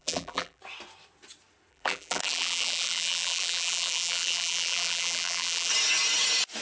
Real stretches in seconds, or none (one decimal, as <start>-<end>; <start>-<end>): 0.6-1.7; 5.7-6.6